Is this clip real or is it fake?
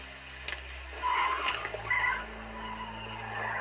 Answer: real